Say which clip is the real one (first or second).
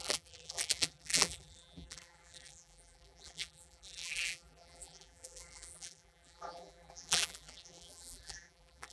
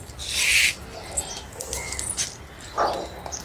second